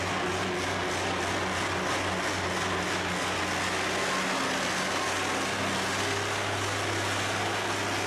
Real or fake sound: real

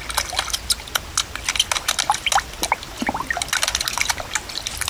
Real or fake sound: real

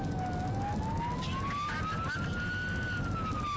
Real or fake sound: real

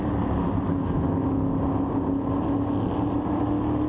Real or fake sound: real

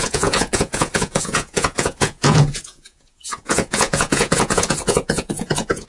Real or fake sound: fake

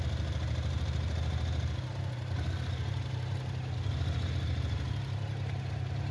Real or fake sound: real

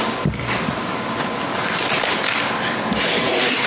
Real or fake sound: real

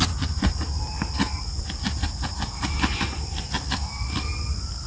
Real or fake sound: real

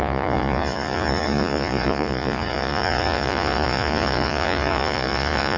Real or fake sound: fake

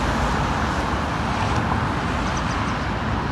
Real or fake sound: real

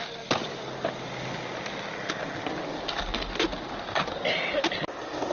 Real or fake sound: real